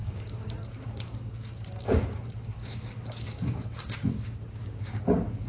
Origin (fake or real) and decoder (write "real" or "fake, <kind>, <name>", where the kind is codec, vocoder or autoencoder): fake, codec, DAC